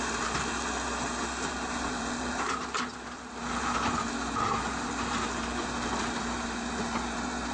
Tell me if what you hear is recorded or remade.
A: remade